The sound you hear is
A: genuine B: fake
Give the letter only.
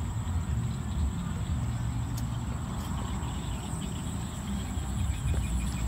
A